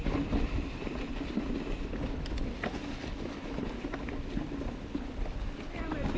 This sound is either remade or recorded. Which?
recorded